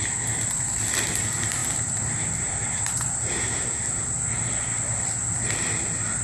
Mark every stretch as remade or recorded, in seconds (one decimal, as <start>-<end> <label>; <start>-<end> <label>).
0.0-1.6 recorded; 1.6-4.2 remade; 4.2-6.2 recorded